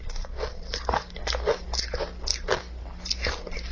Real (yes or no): yes